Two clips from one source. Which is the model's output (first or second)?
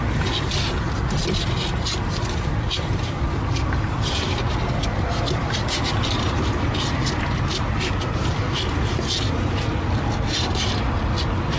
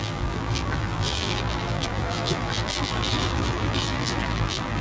second